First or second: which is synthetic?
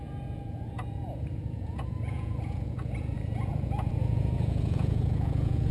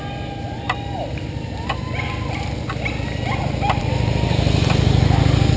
first